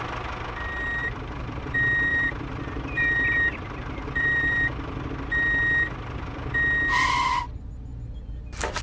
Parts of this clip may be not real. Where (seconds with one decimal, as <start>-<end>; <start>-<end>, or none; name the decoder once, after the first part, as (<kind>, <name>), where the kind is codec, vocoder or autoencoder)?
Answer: 1.0-1.6 (vocoder, BigVGAN v2); 2.1-5.1